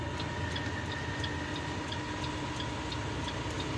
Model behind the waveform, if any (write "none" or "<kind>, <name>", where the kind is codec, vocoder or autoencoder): none